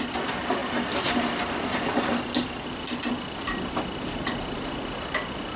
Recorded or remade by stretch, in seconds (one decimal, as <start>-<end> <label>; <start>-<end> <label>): 0.0-5.6 recorded